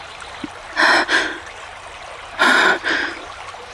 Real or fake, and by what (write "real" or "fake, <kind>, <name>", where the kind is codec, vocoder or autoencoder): real